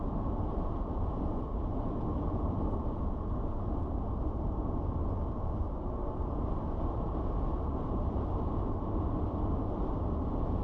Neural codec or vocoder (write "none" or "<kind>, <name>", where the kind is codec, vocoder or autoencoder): none